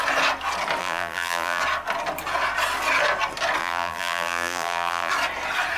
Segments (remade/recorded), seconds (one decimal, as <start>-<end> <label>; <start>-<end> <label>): 0.0-0.8 recorded; 0.8-1.6 remade; 1.6-3.6 recorded; 3.6-5.1 remade; 5.1-5.8 recorded